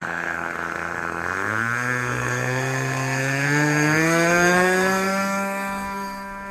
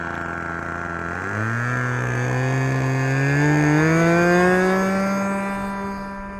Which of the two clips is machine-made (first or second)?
first